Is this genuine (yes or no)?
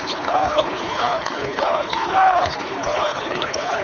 no